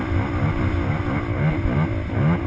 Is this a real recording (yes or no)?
yes